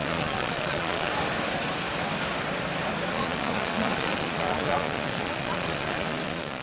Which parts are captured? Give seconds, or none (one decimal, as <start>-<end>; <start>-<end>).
1.1-3.1